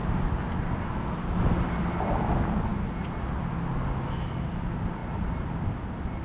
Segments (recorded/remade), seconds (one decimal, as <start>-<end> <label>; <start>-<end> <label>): 0.0-6.2 recorded